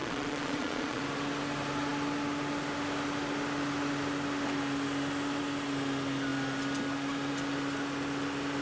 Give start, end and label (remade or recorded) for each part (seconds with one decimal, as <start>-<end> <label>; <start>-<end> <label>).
0.0-1.0 remade; 1.0-8.6 recorded